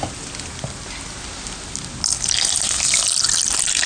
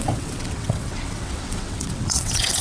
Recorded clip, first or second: first